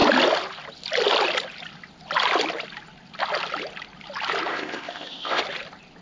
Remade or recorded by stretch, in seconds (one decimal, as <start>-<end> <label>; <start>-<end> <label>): 0.0-4.5 recorded; 4.5-5.4 remade; 5.4-6.0 recorded